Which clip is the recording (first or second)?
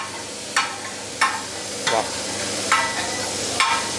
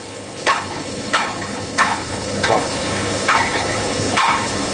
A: first